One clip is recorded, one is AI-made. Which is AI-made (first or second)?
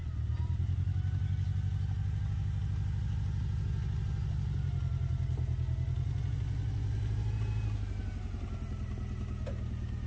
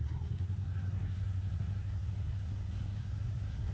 second